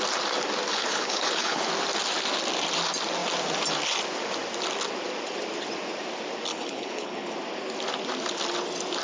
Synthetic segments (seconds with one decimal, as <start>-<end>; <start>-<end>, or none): 0.7-1.7; 6.5-7.3